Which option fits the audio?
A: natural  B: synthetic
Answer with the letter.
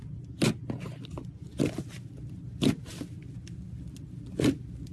A